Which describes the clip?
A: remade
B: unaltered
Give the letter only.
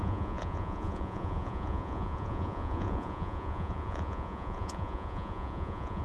A